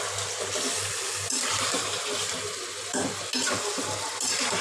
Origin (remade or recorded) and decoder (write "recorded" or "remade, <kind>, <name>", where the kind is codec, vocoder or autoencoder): recorded